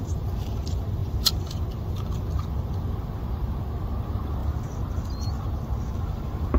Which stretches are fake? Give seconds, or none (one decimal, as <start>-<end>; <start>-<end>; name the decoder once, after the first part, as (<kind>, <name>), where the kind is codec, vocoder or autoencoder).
none